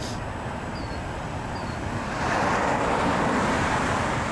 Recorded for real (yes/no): yes